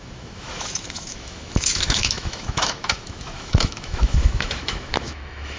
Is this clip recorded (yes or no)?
no